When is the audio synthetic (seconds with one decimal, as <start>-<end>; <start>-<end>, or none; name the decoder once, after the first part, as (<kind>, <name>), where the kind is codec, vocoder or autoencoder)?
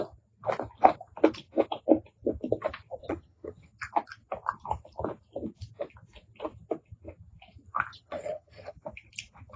3.0-3.7 (vocoder, HiFi-GAN); 7.9-8.7